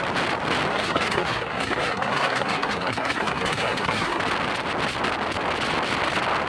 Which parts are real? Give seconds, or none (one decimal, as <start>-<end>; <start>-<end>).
0.0-0.7; 4.2-6.5